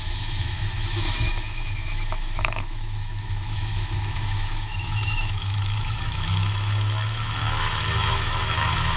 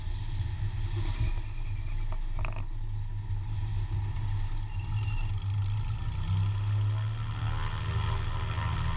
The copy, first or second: first